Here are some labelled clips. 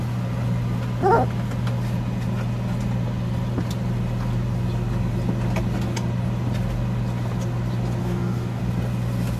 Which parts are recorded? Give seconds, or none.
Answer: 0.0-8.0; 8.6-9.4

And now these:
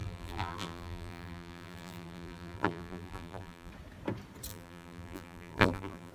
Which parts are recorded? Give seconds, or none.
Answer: 3.7-4.5

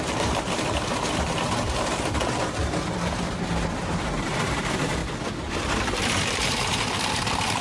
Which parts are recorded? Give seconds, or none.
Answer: 2.6-4.2; 5.0-5.5

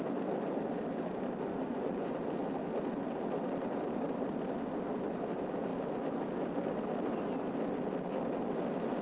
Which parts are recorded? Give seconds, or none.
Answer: 0.0-1.5; 2.1-9.0

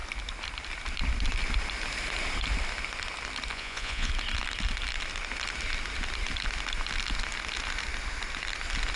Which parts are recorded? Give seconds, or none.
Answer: 0.0-3.5; 4.1-9.0

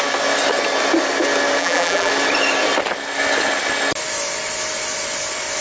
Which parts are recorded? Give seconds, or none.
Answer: 0.0-1.6; 2.1-5.6

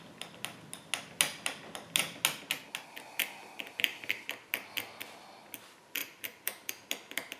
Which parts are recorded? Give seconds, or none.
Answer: 0.0-6.0; 6.7-7.4